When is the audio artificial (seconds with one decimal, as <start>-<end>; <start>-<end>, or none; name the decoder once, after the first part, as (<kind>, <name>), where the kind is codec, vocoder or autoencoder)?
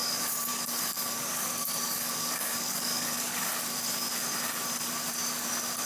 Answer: 0.0-3.5 (codec, DAC)